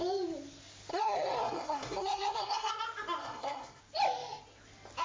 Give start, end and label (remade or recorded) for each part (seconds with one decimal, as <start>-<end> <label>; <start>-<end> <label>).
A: 0.0-0.9 recorded; 0.9-2.7 remade; 2.7-3.2 recorded; 3.2-3.8 remade; 3.8-5.0 recorded